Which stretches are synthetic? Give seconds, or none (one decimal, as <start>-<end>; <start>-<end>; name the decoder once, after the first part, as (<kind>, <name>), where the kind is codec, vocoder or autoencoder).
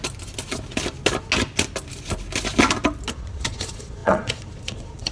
3.1-5.1 (vocoder, Vocos)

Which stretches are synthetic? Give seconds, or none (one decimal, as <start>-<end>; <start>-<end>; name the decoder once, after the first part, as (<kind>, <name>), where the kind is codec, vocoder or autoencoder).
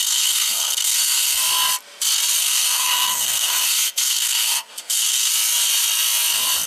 0.0-1.4 (codec, SNAC); 2.4-5.3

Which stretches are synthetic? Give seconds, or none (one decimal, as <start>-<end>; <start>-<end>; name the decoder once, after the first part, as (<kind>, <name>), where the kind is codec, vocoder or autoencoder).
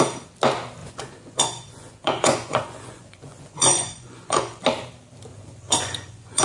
0.8-4.6 (vocoder, Vocos); 5.3-6.4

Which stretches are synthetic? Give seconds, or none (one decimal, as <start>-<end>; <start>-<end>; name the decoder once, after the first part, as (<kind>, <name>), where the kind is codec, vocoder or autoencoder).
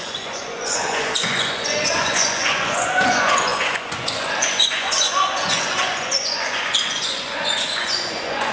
0.0-8.5 (vocoder, Vocos)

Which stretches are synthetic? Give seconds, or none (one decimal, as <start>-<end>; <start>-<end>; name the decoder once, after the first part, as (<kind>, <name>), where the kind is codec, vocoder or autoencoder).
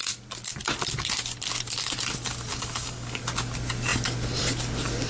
2.5-3.2 (codec, DAC)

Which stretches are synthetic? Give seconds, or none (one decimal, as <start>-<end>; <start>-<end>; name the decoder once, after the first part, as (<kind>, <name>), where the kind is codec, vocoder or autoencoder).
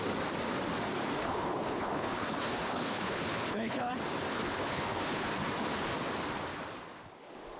1.2-3.9 (codec, HILCodec); 4.3-5.3